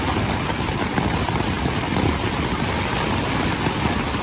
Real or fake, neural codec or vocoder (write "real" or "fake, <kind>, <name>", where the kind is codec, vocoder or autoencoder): real